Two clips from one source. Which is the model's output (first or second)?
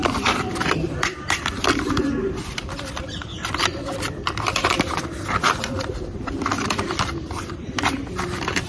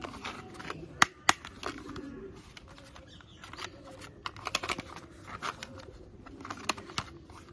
first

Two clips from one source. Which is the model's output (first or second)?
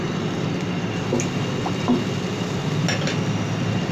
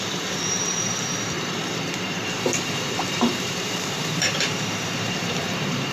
second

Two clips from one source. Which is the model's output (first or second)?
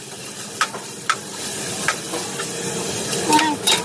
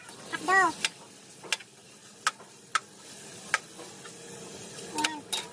first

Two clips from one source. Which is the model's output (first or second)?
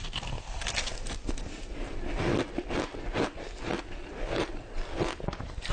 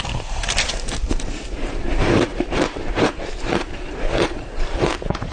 second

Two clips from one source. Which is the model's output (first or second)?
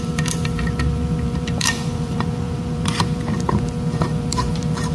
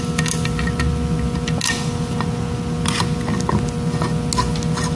first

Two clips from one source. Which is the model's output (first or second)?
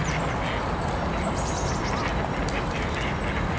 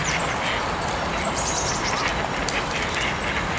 second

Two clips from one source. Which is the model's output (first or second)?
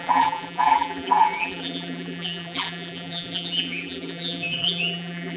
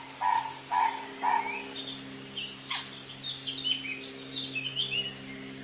first